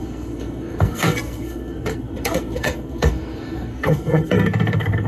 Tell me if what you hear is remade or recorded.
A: remade